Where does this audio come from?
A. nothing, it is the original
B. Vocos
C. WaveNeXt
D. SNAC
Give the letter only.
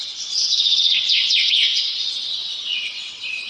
C